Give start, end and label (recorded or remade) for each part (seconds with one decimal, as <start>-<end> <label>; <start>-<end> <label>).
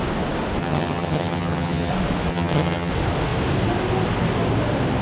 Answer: 0.0-0.6 recorded; 0.6-1.9 remade; 1.9-2.3 recorded; 2.3-2.9 remade; 2.9-5.0 recorded